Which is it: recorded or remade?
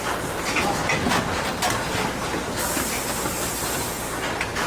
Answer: recorded